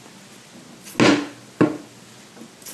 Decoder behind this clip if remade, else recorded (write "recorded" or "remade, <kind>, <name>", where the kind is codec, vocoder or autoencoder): recorded